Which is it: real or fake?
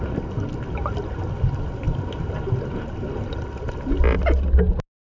real